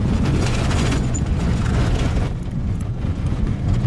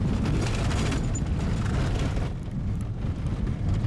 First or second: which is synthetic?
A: first